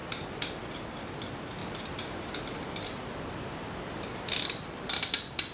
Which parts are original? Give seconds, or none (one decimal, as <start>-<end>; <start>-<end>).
0.6-1.6; 4.9-5.5